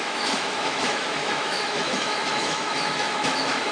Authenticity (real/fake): fake